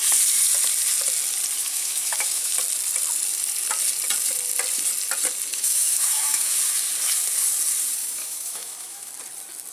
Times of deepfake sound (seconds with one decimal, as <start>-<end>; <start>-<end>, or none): 1.6-2.5; 5.5-6.6; 8.0-9.1